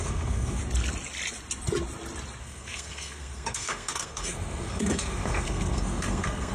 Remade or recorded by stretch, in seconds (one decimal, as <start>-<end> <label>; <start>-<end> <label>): 0.0-0.6 remade; 0.6-2.4 recorded; 2.4-6.5 remade